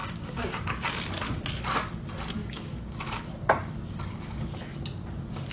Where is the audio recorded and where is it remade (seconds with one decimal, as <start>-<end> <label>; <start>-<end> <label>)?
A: 0.0-0.5 remade; 0.5-2.4 recorded; 2.4-3.2 remade; 3.2-5.5 recorded